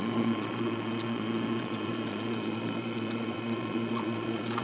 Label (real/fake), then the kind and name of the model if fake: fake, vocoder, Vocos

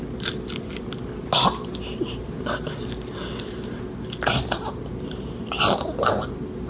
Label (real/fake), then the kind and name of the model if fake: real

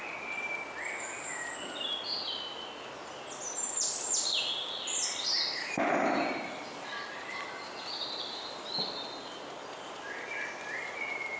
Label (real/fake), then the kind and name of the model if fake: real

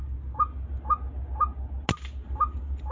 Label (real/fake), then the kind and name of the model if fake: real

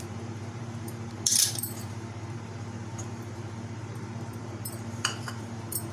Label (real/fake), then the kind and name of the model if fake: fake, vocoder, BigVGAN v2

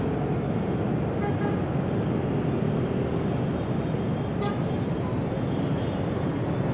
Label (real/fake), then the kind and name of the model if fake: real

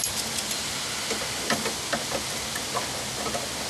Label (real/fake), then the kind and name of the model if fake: real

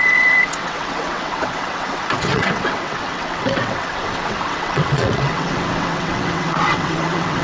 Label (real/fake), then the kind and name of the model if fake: fake, vocoder, WaveNeXt